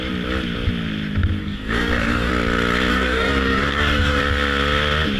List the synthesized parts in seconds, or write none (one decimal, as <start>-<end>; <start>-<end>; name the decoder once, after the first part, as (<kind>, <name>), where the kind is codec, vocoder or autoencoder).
1.4-2.3 (codec, DAC); 2.9-4.2